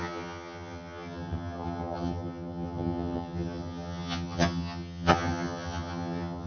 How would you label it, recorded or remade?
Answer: remade